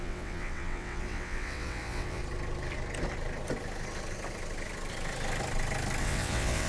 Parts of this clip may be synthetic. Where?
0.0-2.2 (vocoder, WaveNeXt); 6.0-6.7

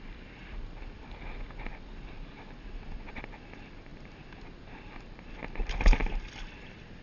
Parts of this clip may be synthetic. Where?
none

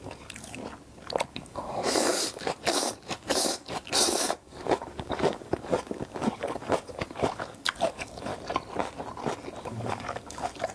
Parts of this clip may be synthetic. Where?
0.0-0.6 (codec, DAC); 1.3-8.3; 9.6-10.7